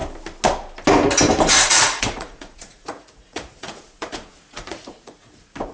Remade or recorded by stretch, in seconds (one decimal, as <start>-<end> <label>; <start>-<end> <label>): 0.0-1.7 recorded; 1.7-5.7 remade

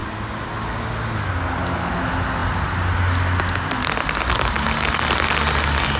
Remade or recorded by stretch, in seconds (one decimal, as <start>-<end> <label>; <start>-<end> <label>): 0.0-6.0 recorded

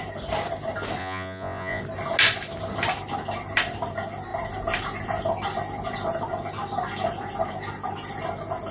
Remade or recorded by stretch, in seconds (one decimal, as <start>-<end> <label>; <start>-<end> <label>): 0.0-1.0 recorded; 1.0-1.8 remade; 1.8-8.7 recorded

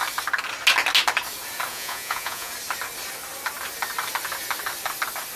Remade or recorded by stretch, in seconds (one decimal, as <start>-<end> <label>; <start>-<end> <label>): 0.0-1.7 recorded; 1.7-2.5 remade; 2.5-5.4 recorded

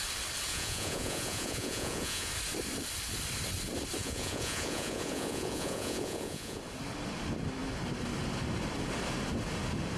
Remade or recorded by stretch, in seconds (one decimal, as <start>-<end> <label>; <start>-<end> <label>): 0.0-0.5 recorded; 0.5-2.3 remade; 2.3-4.0 recorded; 4.0-6.6 remade; 6.6-10.0 recorded

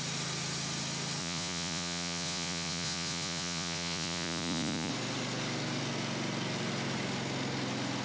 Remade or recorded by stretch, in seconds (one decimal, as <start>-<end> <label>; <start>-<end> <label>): 0.0-1.2 recorded; 1.2-4.9 remade; 4.9-8.0 recorded

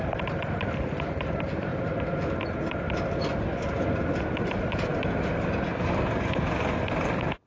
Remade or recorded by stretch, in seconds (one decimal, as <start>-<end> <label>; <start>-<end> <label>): 0.0-7.5 recorded